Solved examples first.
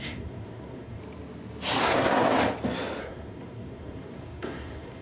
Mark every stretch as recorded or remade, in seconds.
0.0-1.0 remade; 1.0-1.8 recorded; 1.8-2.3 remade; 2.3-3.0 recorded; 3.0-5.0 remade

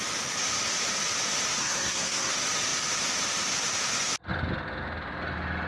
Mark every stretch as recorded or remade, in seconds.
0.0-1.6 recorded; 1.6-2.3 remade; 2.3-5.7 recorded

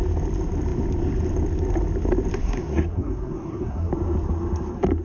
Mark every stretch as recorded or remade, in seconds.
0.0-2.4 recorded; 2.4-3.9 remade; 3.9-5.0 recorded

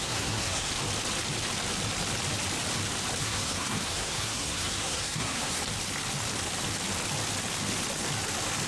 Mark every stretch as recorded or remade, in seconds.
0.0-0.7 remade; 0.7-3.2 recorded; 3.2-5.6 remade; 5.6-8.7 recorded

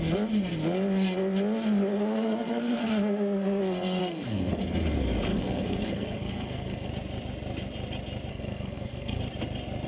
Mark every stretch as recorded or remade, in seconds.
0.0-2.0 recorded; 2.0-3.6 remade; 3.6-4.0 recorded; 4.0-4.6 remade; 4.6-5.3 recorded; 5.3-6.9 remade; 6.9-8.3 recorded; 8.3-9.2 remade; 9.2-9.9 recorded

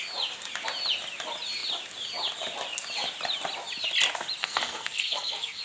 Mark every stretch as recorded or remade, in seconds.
0.0-4.4 recorded; 4.4-5.6 remade

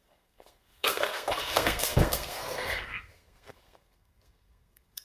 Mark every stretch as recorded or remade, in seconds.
0.0-5.0 remade